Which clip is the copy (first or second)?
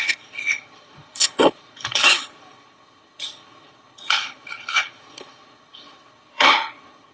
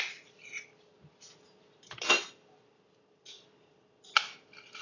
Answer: first